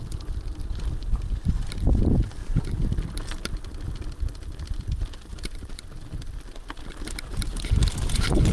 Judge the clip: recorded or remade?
recorded